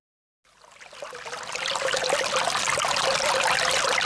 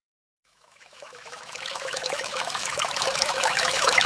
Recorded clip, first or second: first